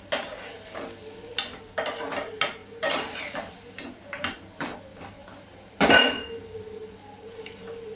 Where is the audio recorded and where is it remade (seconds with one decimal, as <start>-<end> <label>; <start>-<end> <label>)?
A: 0.0-2.6 recorded; 2.6-4.5 remade; 4.5-5.2 recorded; 5.2-5.7 remade; 5.7-8.0 recorded